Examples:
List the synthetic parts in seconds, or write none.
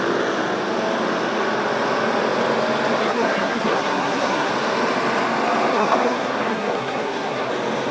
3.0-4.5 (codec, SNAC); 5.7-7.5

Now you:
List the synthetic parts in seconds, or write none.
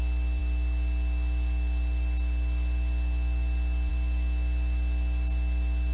none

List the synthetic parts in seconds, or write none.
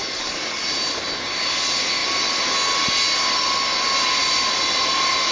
0.0-0.6 (codec, DAC)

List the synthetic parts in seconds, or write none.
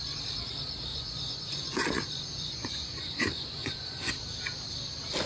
0.9-4.1 (vocoder, Vocos)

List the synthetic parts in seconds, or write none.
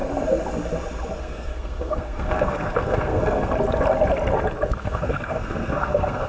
1.2-3.5 (codec, SNAC); 4.8-6.3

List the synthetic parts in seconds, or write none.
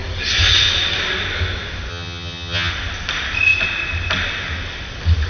1.9-2.7 (vocoder, HiFi-GAN)